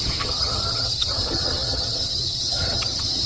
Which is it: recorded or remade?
remade